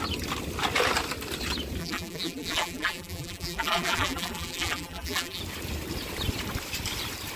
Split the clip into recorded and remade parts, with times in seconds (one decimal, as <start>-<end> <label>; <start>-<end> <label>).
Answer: 0.0-1.8 recorded; 1.8-5.4 remade; 5.4-7.4 recorded